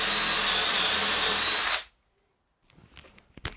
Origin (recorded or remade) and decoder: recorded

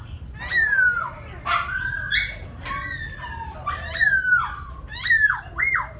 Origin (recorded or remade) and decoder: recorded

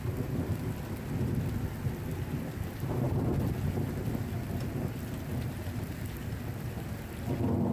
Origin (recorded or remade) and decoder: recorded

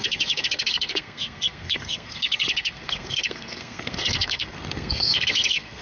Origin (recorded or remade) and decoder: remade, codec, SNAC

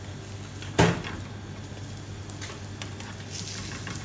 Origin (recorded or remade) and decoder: recorded